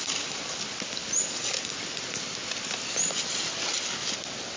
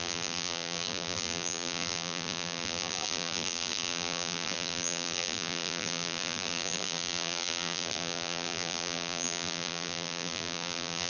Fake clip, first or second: second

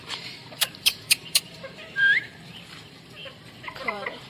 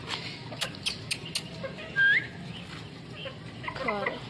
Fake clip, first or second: first